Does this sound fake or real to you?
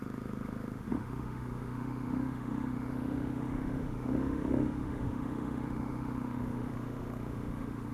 fake